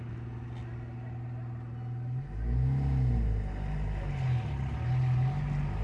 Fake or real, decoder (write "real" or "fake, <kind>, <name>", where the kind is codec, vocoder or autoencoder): real